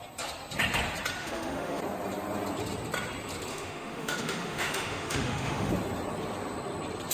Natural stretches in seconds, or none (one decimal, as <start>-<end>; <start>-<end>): 0.0-1.2; 1.8-3.5; 5.7-7.1